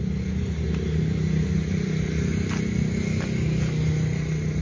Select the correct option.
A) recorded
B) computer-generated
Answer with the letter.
A